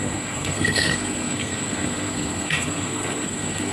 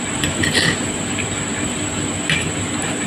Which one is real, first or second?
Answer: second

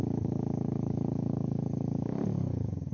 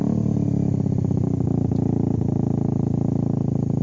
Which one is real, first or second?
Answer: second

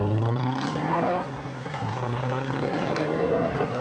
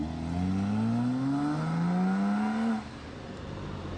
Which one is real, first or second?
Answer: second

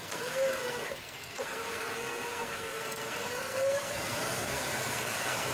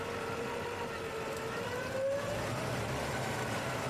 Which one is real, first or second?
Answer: second